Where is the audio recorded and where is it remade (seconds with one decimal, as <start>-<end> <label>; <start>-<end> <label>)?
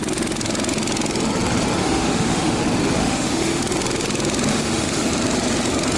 0.0-1.8 recorded; 1.8-2.6 remade; 2.6-3.0 recorded; 3.0-3.6 remade; 3.6-4.5 recorded; 4.5-5.1 remade; 5.1-6.0 recorded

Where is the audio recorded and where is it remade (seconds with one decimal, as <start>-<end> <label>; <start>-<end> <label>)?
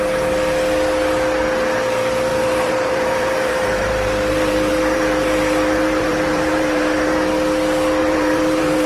0.0-2.3 recorded; 2.3-7.1 remade; 7.1-8.0 recorded; 8.0-8.9 remade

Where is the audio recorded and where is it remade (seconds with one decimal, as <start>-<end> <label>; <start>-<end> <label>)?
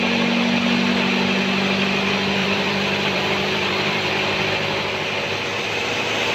0.0-2.4 recorded; 2.4-4.1 remade; 4.1-6.3 recorded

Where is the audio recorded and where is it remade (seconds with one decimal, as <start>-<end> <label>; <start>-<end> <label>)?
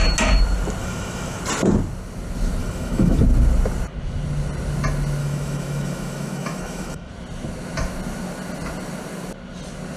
0.0-0.8 recorded; 0.8-1.4 remade; 1.4-2.6 recorded; 2.6-3.2 remade; 3.2-5.2 recorded; 5.2-7.1 remade; 7.1-10.0 recorded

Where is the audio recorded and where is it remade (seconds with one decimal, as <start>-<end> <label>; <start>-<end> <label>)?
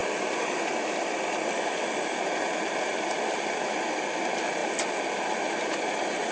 0.0-6.3 recorded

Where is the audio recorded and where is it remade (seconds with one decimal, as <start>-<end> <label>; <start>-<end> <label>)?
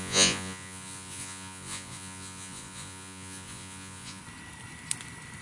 0.0-4.2 remade; 4.2-5.4 recorded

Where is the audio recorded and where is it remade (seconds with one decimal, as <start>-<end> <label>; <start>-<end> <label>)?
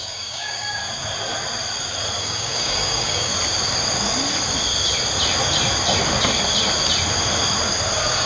0.0-0.8 remade; 0.8-2.2 recorded; 2.2-3.3 remade; 3.3-8.3 recorded